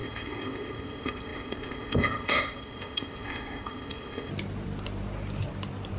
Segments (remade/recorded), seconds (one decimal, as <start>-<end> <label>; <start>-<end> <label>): 0.0-4.3 remade; 4.3-6.0 recorded

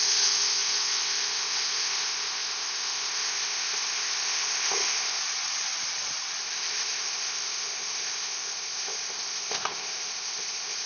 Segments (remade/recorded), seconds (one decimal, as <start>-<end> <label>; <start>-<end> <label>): 0.0-5.2 remade; 5.2-6.4 recorded; 6.4-10.9 remade

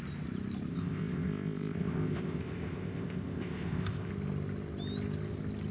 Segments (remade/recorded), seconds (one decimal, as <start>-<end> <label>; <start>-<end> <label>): 0.0-0.7 recorded; 0.7-4.1 remade; 4.1-5.7 recorded

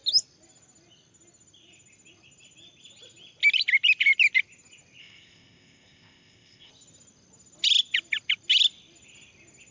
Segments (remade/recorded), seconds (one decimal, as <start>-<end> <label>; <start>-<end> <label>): 0.0-5.0 recorded; 5.0-6.7 remade; 6.7-9.7 recorded

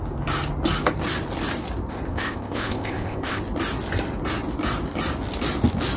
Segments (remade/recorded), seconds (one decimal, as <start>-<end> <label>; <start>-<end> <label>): 0.0-2.1 recorded; 2.1-3.4 remade; 3.4-6.0 recorded

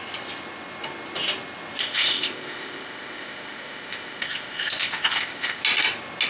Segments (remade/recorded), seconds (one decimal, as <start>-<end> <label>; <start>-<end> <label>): 0.0-1.8 recorded; 1.8-5.6 remade; 5.6-6.3 recorded

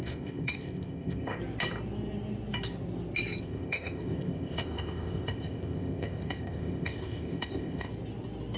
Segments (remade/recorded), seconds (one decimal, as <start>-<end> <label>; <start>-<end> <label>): 0.0-1.4 remade; 1.4-3.4 recorded; 3.4-7.9 remade; 7.9-8.6 recorded